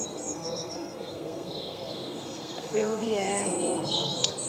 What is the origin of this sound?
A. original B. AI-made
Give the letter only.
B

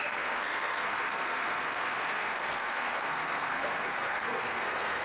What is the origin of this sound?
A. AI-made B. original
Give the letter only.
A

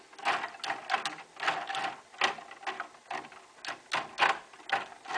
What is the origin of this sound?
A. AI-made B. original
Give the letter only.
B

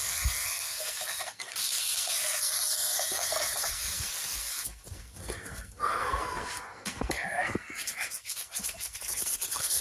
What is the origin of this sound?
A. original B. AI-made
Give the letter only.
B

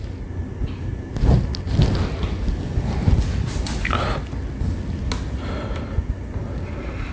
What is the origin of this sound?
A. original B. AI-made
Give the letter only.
A